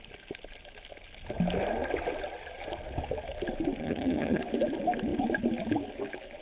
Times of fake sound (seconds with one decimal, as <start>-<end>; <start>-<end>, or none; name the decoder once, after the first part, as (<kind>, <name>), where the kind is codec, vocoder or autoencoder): 3.8-4.4 (vocoder, HiFi-GAN)